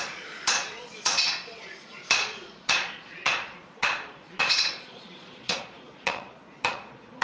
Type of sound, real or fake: fake